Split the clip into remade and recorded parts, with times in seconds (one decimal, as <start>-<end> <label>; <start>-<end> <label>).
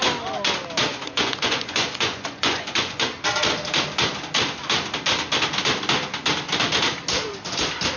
0.0-0.9 recorded; 0.9-3.1 remade; 3.1-8.0 recorded